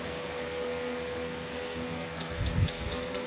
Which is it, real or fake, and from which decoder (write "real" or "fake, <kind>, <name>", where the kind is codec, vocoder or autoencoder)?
fake, codec, SNAC